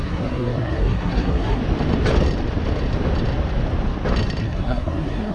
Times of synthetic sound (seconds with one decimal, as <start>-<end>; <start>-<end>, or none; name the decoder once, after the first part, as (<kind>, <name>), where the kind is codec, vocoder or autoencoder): 0.0-1.6 (codec, SNAC); 4.4-5.3